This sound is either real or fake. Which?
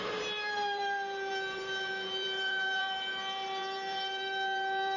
fake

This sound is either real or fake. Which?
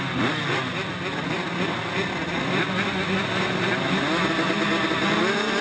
real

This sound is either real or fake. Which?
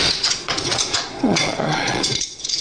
fake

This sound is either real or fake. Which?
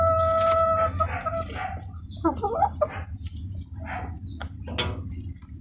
real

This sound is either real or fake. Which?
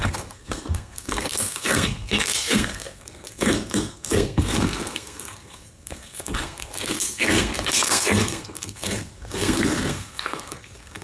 fake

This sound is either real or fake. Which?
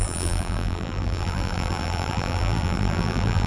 fake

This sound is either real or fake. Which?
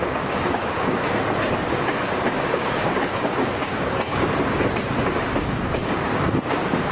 fake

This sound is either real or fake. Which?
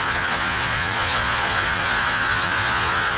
fake